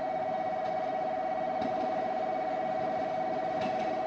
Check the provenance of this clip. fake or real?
real